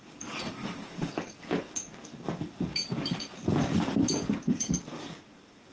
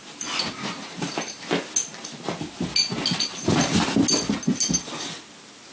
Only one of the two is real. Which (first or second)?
second